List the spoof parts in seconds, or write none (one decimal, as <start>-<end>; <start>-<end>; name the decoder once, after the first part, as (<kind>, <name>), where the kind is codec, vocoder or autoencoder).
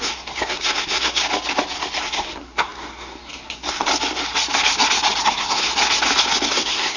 0.0-1.2 (codec, SNAC); 2.0-3.9; 5.2-5.7; 6.5-7.0